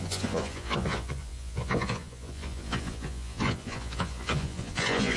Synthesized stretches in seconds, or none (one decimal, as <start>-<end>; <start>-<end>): 0.0-5.2